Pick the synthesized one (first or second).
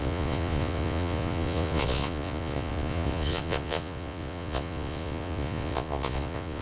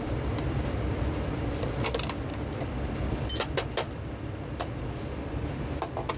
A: first